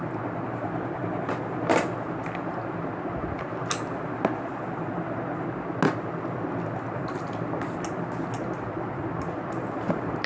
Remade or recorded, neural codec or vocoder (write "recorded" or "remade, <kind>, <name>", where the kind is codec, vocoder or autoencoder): recorded